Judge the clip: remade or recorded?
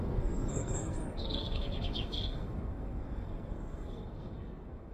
remade